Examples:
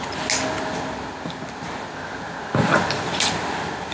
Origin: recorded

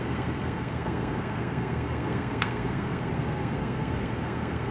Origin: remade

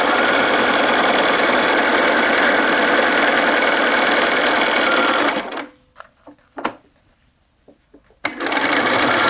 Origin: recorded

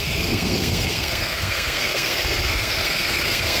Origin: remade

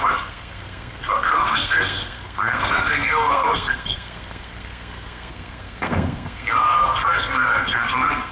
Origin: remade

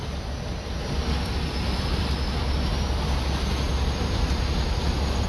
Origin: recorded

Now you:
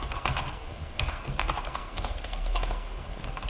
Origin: remade